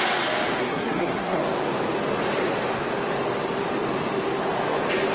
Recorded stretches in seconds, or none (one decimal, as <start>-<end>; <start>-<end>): 0.0-0.6; 1.4-5.1